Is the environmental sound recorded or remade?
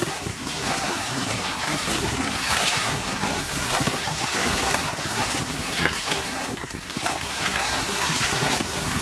remade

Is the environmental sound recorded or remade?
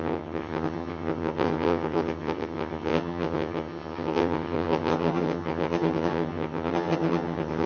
remade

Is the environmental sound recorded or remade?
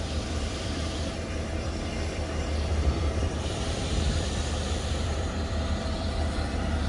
remade